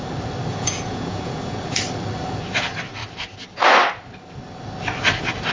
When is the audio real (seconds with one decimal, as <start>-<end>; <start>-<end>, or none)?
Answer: 0.0-0.5; 1.8-5.5